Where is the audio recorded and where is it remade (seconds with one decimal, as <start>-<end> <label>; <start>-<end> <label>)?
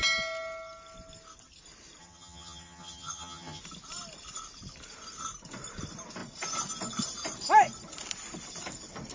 0.0-2.0 recorded; 2.0-3.6 remade; 3.6-9.1 recorded